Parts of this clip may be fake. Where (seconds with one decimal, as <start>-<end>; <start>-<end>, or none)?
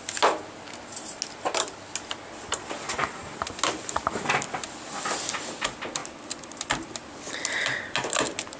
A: none